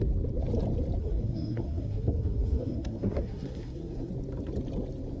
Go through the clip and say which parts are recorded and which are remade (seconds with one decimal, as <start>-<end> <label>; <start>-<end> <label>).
0.0-1.0 recorded; 1.0-4.1 remade; 4.1-5.2 recorded